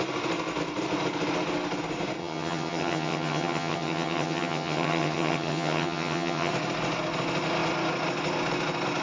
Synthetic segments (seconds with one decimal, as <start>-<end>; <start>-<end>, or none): 2.2-6.5